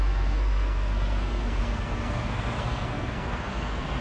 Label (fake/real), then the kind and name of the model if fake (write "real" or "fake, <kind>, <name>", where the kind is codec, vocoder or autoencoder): fake, codec, SNAC